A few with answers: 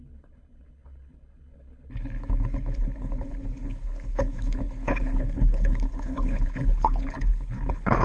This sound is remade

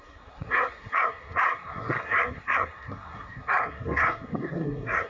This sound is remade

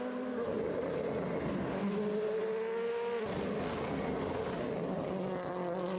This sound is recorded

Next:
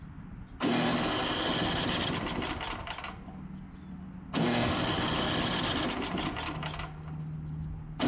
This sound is recorded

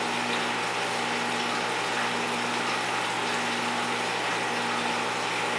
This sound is recorded